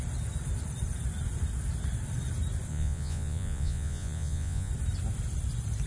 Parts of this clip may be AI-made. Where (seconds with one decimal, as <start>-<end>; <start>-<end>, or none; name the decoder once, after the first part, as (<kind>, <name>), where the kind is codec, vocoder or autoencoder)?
2.7-4.7 (vocoder, Vocos)